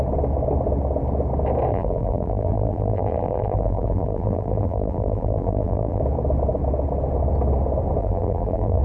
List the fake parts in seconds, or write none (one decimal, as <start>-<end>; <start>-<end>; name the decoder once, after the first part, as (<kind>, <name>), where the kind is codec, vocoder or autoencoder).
1.7-6.0 (vocoder, BigVGAN v2); 8.0-8.8